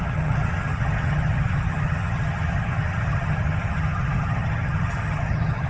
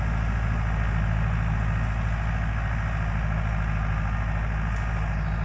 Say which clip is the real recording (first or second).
second